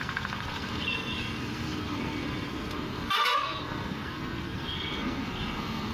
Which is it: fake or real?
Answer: fake